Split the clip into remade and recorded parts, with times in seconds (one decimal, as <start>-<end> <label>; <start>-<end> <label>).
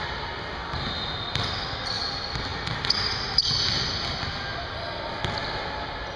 0.0-6.2 recorded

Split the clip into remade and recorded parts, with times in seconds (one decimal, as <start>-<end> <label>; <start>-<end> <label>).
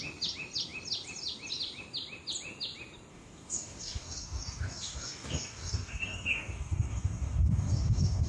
0.0-3.1 recorded; 3.1-8.3 remade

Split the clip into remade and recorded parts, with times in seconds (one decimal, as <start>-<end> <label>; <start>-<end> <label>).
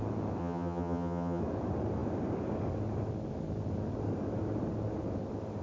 0.0-0.4 recorded; 0.4-1.4 remade; 1.4-5.6 recorded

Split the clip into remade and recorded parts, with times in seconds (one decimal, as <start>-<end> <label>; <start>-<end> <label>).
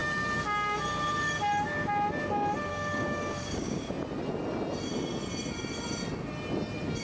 0.0-2.7 recorded; 2.7-3.9 remade; 3.9-7.0 recorded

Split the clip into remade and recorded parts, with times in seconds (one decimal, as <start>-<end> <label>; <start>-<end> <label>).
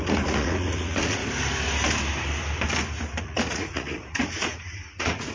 0.0-1.2 remade; 1.2-3.2 recorded; 3.2-5.3 remade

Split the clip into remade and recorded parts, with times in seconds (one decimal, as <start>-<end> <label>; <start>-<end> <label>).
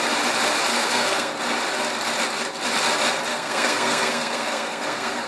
0.0-0.7 recorded; 0.7-1.3 remade; 1.3-3.3 recorded; 3.3-5.3 remade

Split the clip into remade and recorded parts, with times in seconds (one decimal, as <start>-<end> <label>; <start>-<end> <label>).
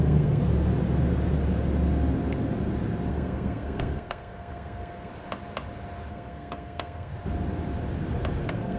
0.0-0.4 remade; 0.4-3.1 recorded; 3.1-5.1 remade; 5.1-6.1 recorded; 6.1-7.1 remade; 7.1-8.4 recorded; 8.4-8.8 remade